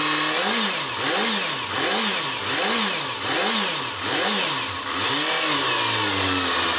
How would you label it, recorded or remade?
recorded